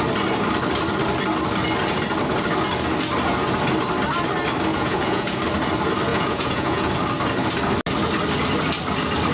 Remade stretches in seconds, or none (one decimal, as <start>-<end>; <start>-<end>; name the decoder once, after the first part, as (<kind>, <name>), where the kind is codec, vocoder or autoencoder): 4.7-5.4 (vocoder, Vocos); 6.1-6.9